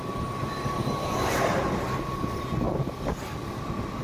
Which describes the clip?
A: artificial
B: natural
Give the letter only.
B